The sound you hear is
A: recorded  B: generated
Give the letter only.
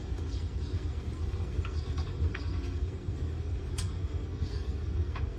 B